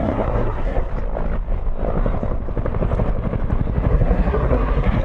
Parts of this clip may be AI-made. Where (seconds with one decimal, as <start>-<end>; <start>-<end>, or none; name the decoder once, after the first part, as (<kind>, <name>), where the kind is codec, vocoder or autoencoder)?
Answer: 0.0-0.9 (codec, SNAC); 3.9-5.0